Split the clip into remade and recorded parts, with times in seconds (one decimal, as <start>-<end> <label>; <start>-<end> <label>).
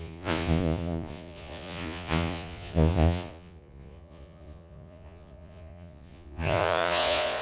0.0-7.4 remade